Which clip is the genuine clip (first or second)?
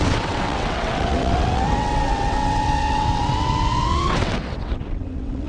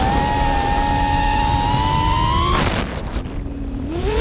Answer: second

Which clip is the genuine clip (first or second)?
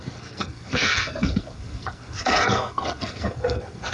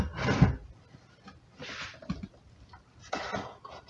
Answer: second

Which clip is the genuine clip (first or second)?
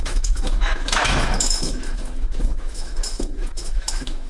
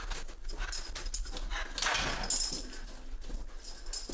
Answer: second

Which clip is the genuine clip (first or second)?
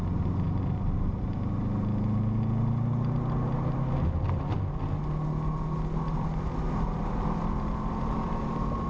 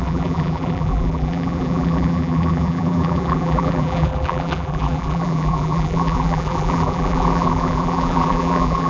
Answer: first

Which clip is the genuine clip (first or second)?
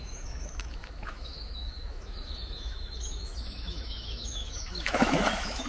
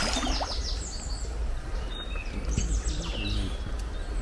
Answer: second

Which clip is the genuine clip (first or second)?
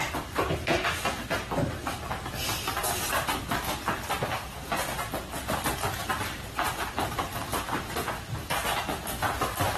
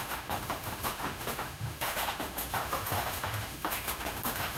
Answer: first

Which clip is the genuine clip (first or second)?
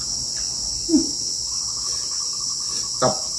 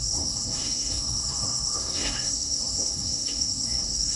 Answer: first